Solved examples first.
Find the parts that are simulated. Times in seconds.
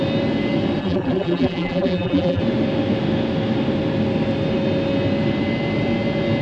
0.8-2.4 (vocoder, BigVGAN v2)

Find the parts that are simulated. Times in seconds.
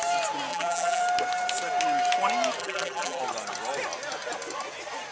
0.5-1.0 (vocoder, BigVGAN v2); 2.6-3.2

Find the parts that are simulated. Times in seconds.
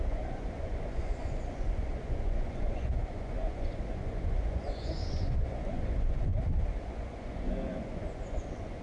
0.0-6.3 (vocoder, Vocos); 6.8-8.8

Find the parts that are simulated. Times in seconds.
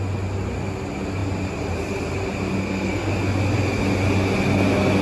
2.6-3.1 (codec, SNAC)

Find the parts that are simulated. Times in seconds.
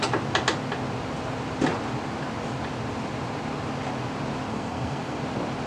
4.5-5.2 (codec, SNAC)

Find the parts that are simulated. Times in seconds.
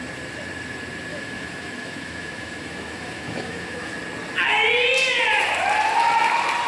1.1-3.9 (autoencoder, DAC-VAE)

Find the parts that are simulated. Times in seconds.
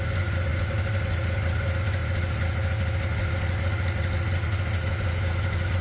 none